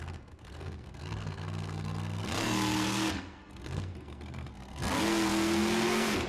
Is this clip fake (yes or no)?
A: yes